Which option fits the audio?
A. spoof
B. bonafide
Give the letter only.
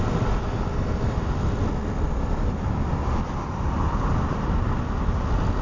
B